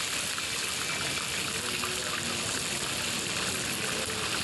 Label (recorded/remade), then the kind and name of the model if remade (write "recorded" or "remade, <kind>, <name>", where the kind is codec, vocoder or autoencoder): recorded